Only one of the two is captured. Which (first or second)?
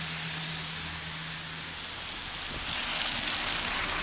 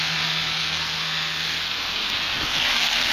first